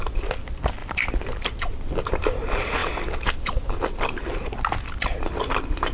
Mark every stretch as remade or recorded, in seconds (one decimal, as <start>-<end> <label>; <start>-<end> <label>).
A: 0.0-0.8 recorded; 0.8-1.6 remade; 1.6-5.9 recorded